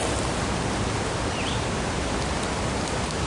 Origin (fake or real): real